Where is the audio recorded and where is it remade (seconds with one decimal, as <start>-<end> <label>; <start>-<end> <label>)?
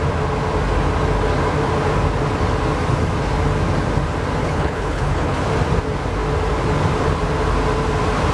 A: 0.0-4.4 recorded; 4.4-5.4 remade; 5.4-8.3 recorded